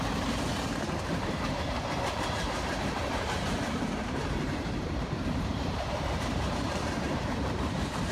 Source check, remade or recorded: remade